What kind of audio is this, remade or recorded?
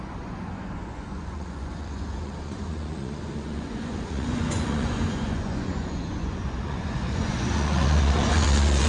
remade